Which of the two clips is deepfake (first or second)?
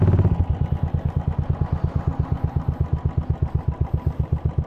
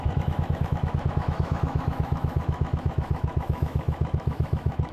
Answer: second